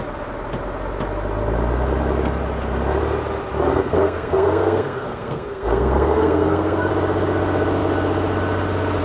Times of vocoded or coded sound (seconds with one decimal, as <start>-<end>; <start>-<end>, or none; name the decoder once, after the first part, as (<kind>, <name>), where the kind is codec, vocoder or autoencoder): 3.7-6.9 (codec, SNAC)